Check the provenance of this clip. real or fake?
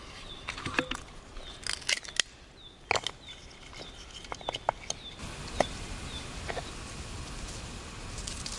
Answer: real